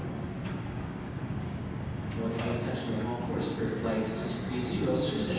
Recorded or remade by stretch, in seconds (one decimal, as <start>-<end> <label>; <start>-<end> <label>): 0.0-3.2 remade; 3.2-5.4 recorded